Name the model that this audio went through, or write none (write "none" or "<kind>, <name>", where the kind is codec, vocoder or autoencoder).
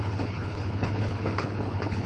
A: codec, HILCodec